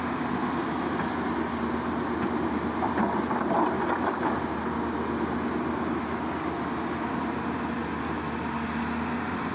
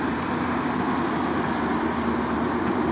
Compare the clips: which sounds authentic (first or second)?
first